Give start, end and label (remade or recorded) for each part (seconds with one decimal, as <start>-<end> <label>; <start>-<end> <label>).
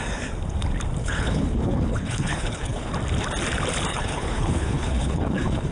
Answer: 0.0-1.0 recorded; 1.0-2.9 remade; 2.9-3.9 recorded; 3.9-5.7 remade